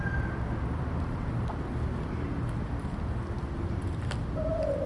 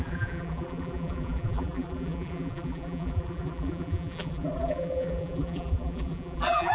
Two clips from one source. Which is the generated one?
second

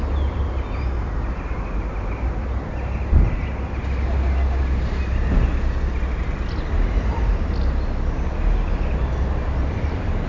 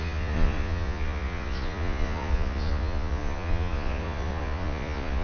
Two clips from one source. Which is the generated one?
second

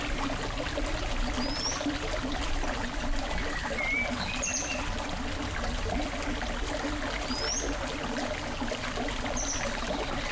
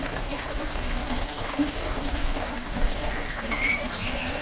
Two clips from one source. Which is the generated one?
second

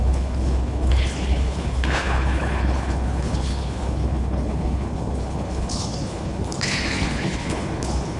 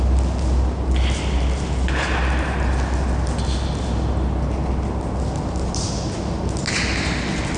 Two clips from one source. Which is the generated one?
first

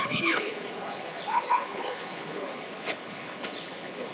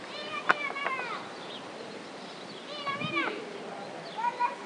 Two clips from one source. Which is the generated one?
first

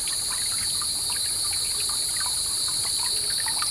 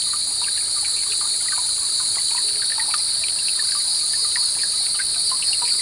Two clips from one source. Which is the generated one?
second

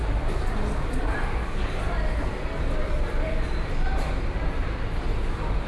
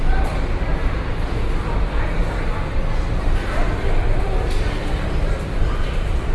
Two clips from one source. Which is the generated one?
second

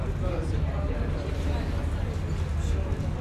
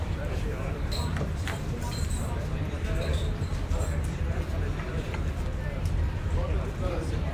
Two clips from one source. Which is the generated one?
second